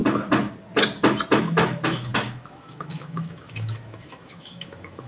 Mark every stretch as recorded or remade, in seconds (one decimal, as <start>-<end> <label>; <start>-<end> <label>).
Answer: 0.0-1.4 recorded; 1.4-5.1 remade